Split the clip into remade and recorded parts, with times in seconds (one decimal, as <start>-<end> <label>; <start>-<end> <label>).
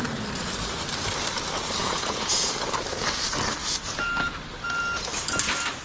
0.0-1.8 recorded; 1.8-2.5 remade; 2.5-5.8 recorded